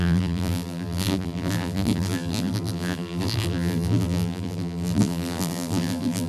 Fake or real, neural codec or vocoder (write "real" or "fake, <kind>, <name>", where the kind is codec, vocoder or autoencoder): fake, vocoder, BigVGAN v2